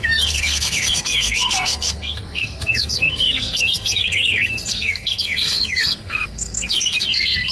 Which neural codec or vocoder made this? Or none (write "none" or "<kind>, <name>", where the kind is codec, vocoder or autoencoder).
codec, SNAC